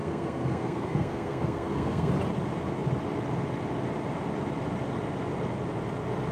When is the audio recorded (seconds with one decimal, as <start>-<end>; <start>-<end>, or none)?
2.1-6.3